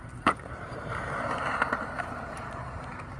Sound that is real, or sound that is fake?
fake